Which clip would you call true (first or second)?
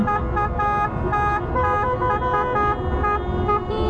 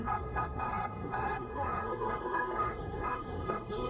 first